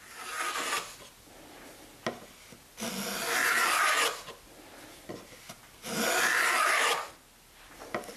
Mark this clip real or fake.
real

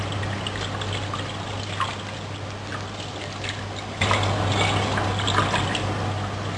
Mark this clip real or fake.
real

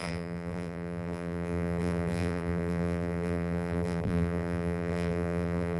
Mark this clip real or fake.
fake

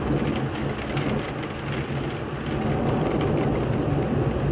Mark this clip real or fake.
real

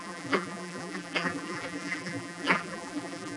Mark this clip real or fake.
fake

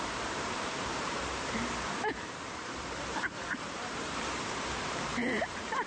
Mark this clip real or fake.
fake